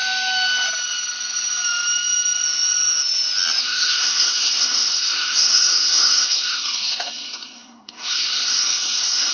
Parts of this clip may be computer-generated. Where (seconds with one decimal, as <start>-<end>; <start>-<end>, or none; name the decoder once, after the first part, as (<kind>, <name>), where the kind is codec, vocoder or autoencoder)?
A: 3.6-9.3 (codec, SNAC)